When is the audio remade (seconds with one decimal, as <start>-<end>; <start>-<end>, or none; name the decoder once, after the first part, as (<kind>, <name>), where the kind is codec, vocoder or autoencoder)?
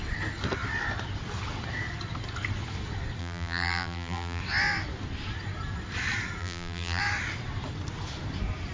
3.2-4.4 (vocoder, BigVGAN v2); 6.4-7.0